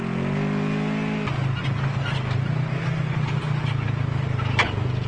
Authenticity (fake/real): real